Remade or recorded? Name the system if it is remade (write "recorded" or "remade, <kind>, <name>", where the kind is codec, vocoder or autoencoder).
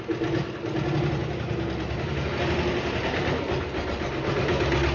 recorded